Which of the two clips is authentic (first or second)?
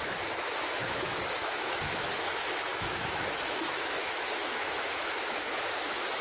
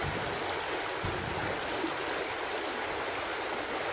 second